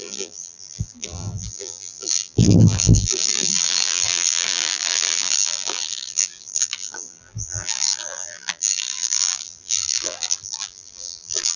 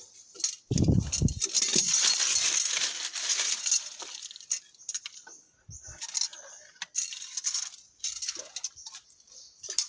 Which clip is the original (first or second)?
second